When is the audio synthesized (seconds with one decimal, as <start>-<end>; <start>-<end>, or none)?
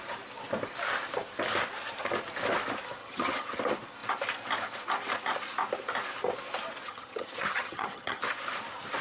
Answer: 3.0-3.6; 6.8-8.2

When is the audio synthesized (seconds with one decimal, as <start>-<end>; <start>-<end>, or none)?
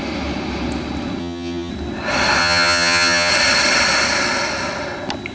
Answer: 1.2-1.7; 2.4-3.3